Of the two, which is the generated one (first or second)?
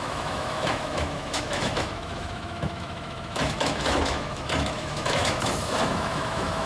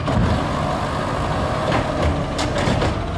first